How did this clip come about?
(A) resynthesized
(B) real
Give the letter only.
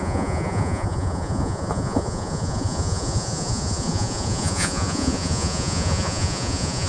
A